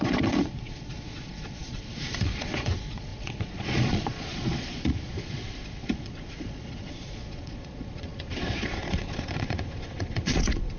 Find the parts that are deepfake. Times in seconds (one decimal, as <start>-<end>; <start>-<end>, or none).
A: 0.0-10.8